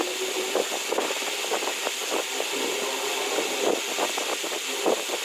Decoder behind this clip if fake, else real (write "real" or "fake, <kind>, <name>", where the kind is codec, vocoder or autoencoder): real